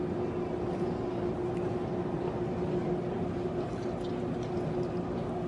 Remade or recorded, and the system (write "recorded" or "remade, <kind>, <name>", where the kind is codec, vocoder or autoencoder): recorded